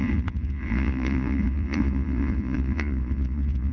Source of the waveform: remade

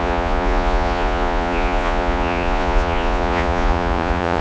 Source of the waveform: remade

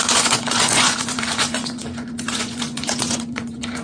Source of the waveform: remade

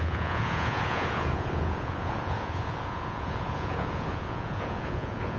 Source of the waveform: remade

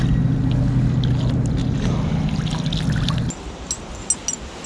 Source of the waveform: recorded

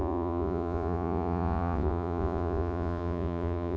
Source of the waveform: remade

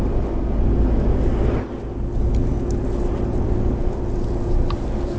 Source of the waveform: recorded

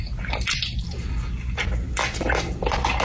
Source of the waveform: recorded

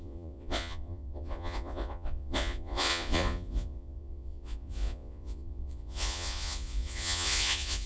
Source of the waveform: remade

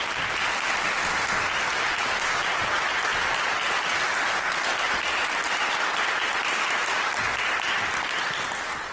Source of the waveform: recorded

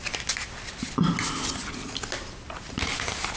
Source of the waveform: recorded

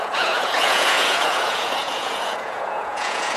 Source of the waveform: remade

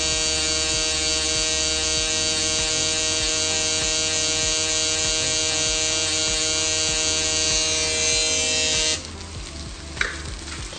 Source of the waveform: recorded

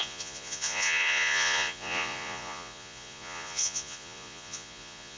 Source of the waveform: remade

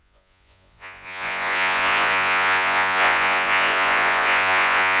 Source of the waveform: remade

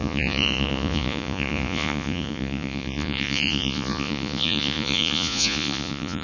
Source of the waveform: remade